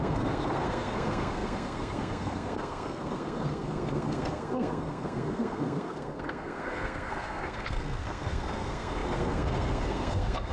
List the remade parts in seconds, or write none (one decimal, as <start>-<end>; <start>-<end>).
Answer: 0.0-10.5